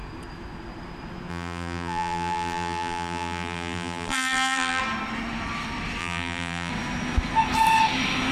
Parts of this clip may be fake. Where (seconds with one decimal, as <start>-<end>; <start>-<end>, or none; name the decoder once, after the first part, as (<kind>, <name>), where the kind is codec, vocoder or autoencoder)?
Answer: 1.3-4.8 (vocoder, BigVGAN v2); 6.0-6.7